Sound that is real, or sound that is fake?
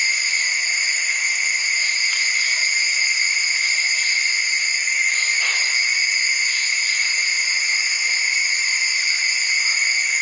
real